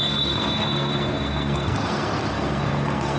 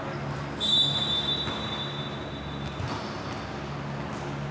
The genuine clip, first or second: second